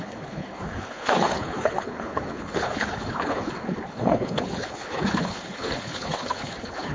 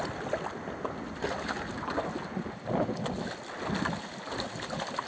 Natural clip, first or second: second